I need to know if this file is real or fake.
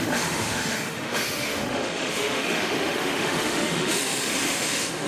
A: fake